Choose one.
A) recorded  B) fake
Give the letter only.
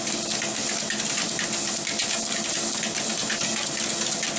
A